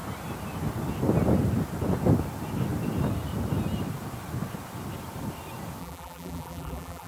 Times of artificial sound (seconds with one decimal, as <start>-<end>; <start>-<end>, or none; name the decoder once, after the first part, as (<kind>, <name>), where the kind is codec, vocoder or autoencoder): 5.8-7.1 (vocoder, BigVGAN v2)